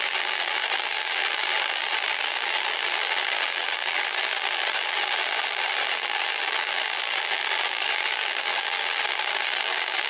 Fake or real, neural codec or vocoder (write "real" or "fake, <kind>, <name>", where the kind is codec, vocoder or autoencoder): fake, vocoder, BigVGAN v2